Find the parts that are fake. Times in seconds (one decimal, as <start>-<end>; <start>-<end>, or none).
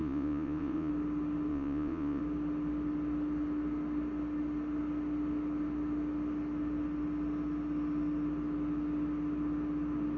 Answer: 0.0-0.9; 1.5-2.2